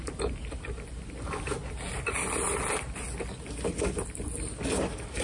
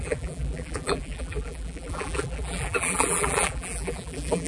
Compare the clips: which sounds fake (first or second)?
second